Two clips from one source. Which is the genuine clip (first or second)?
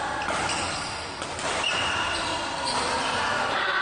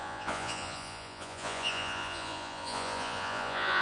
first